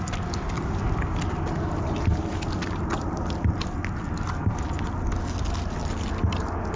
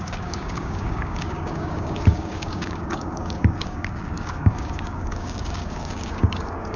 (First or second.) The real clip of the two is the first